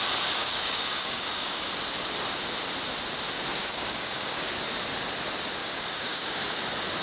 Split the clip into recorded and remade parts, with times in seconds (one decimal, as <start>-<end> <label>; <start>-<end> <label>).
0.0-0.4 recorded; 0.4-1.7 remade; 1.7-3.6 recorded; 3.6-4.5 remade; 4.5-5.6 recorded; 5.6-6.6 remade; 6.6-7.0 recorded

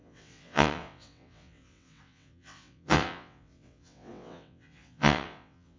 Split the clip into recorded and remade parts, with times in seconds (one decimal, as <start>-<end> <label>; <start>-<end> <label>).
0.0-5.8 remade

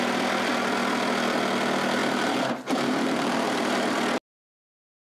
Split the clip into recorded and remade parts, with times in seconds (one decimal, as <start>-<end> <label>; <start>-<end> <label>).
0.0-2.0 recorded; 2.0-4.0 remade; 4.0-5.0 recorded

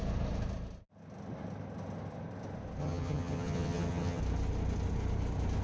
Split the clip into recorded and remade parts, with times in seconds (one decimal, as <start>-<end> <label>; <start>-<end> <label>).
0.0-2.8 recorded; 2.8-4.2 remade; 4.2-5.6 recorded

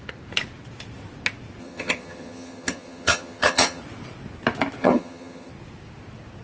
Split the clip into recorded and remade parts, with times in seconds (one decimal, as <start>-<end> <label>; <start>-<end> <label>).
0.0-1.6 recorded; 1.6-3.8 remade; 3.8-4.8 recorded; 4.8-5.5 remade; 5.5-6.4 recorded